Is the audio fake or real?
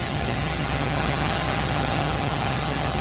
fake